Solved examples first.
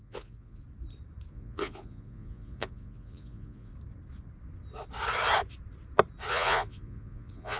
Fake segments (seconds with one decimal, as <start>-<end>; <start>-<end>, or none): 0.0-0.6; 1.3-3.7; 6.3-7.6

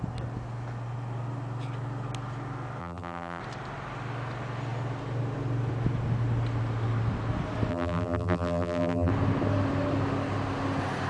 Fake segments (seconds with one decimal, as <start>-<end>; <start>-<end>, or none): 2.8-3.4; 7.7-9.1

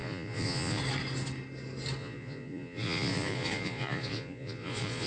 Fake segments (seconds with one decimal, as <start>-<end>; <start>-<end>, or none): 0.0-0.8; 2.0-5.1

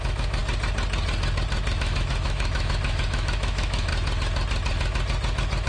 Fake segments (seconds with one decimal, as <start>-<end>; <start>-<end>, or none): 0.0-0.4; 1.7-3.9

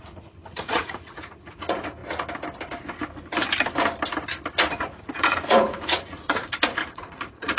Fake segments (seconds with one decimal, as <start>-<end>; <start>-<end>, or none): 0.0-2.0; 4.7-6.4; 6.9-7.6

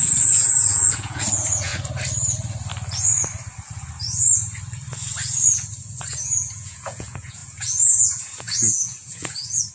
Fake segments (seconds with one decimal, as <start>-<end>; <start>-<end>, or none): 0.0-1.7; 5.8-9.7

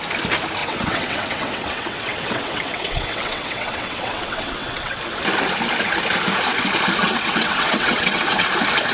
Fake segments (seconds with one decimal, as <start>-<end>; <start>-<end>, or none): 0.6-5.0; 7.0-8.5